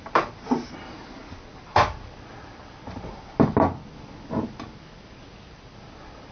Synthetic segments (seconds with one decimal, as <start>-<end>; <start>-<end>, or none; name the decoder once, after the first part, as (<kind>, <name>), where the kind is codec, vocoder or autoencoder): none